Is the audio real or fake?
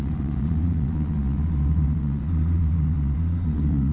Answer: fake